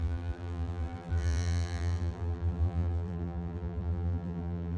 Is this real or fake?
fake